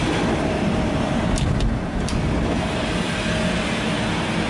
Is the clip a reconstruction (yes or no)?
no